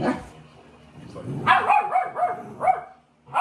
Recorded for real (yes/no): yes